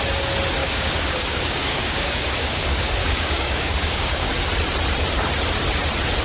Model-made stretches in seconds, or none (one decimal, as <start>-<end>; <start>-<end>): 0.6-4.3